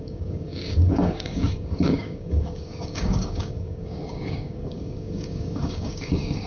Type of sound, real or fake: fake